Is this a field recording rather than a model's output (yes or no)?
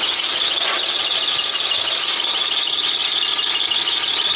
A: yes